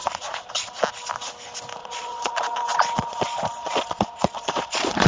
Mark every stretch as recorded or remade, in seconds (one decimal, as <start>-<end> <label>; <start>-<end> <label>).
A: 0.0-0.7 remade; 0.7-1.8 recorded; 1.8-5.1 remade